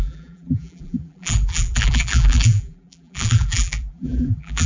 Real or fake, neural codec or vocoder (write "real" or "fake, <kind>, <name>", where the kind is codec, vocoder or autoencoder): fake, vocoder, BigVGAN v2